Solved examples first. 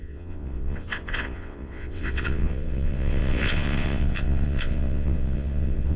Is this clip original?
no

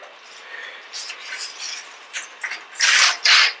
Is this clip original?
yes